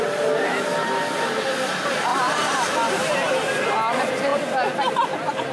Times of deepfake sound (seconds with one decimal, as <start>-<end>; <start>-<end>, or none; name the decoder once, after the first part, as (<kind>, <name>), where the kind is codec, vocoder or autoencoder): 2.1-3.1 (vocoder, BigVGAN v2)